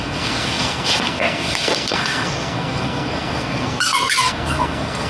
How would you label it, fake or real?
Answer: fake